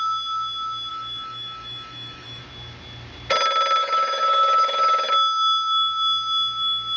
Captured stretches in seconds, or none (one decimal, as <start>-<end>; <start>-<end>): 0.0-0.9; 2.4-3.8; 5.1-7.0